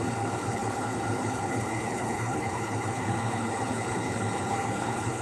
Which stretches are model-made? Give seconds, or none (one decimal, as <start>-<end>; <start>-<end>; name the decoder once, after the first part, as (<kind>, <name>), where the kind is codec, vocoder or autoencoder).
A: 0.0-5.2 (codec, HILCodec)